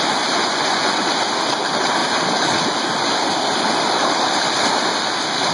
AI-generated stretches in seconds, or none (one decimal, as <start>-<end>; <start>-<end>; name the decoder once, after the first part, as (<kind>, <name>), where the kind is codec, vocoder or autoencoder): 0.4-0.9 (vocoder, Vocos)